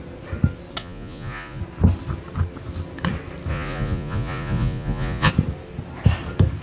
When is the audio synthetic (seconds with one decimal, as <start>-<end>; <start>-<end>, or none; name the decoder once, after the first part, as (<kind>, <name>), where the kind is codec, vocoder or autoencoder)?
0.8-1.6 (vocoder, Vocos); 3.5-5.3